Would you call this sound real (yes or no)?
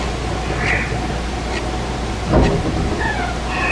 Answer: yes